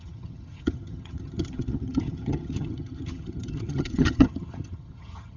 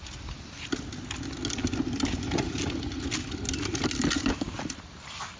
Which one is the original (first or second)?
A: second